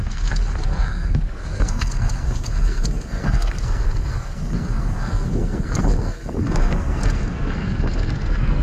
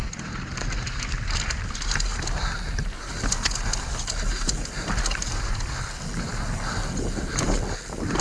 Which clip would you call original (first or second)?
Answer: second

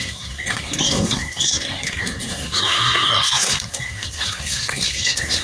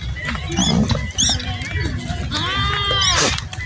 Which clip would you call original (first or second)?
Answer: second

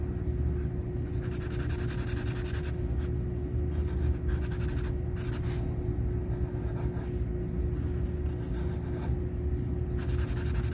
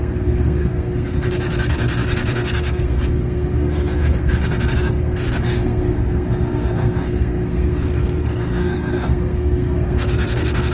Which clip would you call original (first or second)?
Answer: first